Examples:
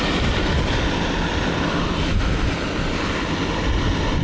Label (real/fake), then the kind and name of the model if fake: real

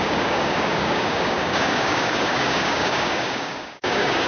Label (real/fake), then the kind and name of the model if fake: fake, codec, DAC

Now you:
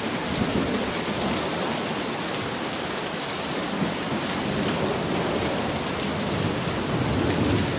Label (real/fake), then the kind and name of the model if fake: real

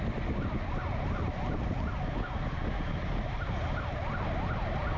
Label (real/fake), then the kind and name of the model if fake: real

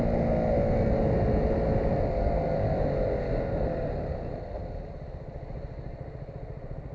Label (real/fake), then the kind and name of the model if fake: real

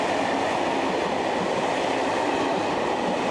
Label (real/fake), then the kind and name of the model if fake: real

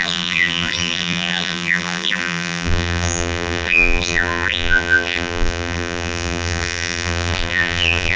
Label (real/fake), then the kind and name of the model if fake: fake, vocoder, BigVGAN v2